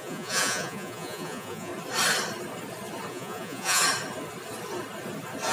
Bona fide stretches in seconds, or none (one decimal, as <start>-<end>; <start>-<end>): 1.7-3.1; 3.8-5.5